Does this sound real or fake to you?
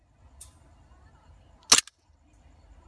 real